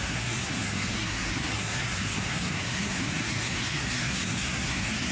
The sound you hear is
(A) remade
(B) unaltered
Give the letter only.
A